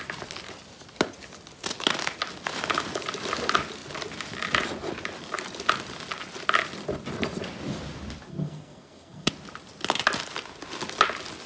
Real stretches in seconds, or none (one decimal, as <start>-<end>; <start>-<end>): 0.0-8.3; 9.3-11.5

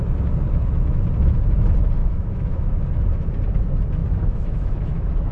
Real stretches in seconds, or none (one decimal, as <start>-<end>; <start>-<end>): 0.0-2.0; 2.8-4.0

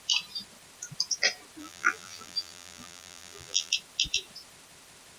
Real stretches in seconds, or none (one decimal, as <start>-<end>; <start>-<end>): 0.0-1.6; 3.7-5.2

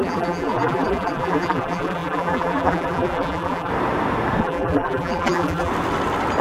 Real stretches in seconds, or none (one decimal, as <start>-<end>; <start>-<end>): 3.7-4.4; 5.7-6.4

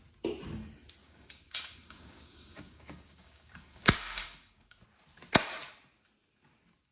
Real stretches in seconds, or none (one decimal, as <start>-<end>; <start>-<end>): 0.0-1.0; 4.8-6.9

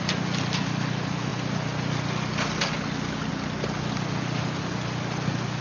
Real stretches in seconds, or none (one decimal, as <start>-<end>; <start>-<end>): 0.0-5.6

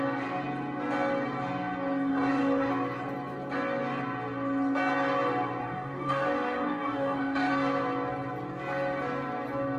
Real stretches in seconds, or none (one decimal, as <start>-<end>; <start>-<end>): 0.0-2.1; 2.7-5.6; 7.5-9.8

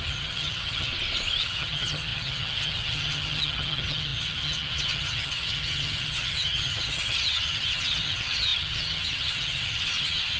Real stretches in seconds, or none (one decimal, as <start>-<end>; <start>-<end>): 0.9-1.4